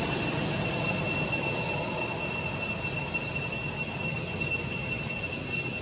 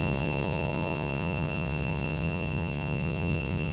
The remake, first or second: second